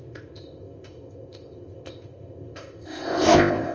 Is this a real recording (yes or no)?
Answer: no